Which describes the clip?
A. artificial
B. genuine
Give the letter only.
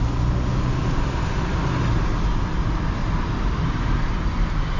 B